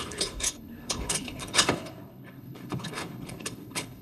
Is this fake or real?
fake